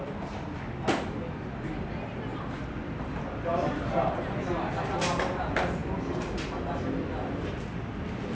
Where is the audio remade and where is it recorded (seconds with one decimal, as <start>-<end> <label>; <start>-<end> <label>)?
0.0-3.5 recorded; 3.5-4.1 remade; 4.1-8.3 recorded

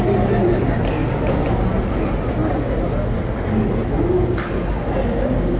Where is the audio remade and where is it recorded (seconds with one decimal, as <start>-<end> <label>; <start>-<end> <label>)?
0.0-1.0 recorded; 1.0-1.5 remade; 1.5-2.4 recorded; 2.4-3.3 remade; 3.3-5.6 recorded

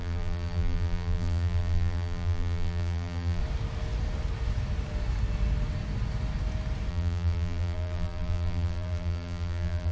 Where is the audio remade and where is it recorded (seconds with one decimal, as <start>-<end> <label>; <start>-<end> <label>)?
0.0-3.4 remade; 3.4-6.9 recorded; 6.9-9.9 remade

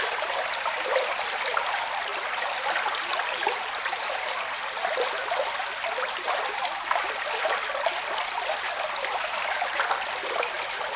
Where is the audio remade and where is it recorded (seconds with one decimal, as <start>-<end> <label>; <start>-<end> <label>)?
0.0-3.1 recorded; 3.1-4.0 remade; 4.0-11.0 recorded